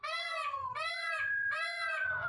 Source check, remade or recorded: remade